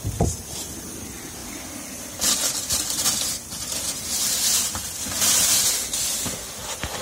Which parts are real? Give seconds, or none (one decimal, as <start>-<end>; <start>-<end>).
0.0-7.0